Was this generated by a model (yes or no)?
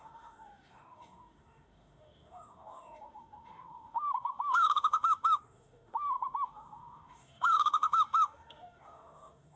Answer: yes